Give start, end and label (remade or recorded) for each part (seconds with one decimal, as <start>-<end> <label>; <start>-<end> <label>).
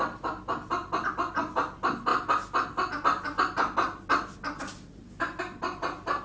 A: 0.0-6.2 recorded